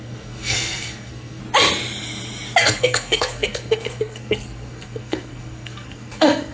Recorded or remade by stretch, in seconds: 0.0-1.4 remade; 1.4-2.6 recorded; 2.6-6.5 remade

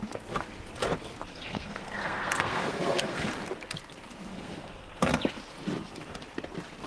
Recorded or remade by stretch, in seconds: 0.0-1.3 recorded; 1.3-3.3 remade; 3.3-4.3 recorded; 4.3-5.0 remade; 5.0-6.9 recorded

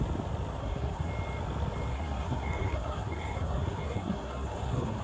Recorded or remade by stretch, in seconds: 0.0-0.6 recorded; 0.6-1.1 remade; 1.1-1.9 recorded; 1.9-5.0 remade

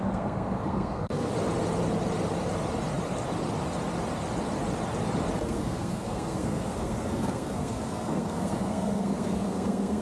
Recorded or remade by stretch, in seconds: 0.0-1.3 remade; 1.3-5.4 recorded; 5.4-10.0 remade

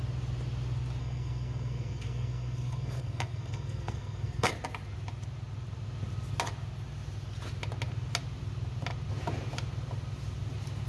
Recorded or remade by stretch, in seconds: 0.0-1.0 recorded; 1.0-4.5 remade; 4.5-10.9 recorded

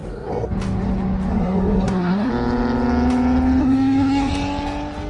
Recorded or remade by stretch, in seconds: 0.0-1.3 recorded; 1.3-2.3 remade; 2.3-3.6 recorded; 3.6-4.3 remade; 4.3-5.1 recorded